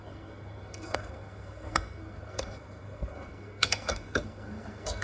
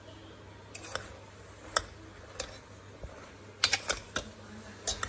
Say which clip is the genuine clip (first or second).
second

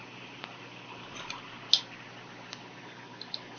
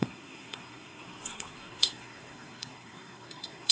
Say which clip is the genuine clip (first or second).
first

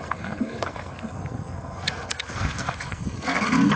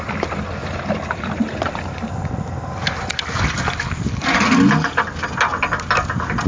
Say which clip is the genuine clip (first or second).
second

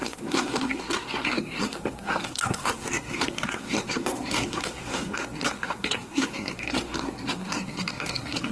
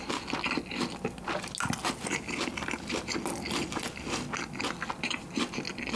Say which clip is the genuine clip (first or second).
second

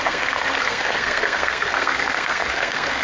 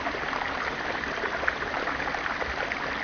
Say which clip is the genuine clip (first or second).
second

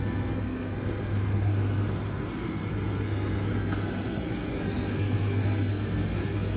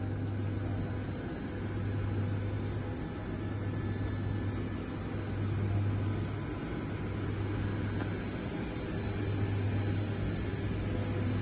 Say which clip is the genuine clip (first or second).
second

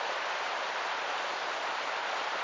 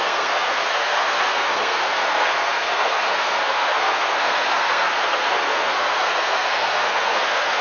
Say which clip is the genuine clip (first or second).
first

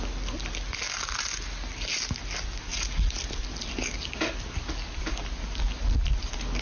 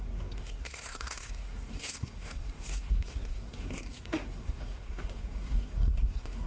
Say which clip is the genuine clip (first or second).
first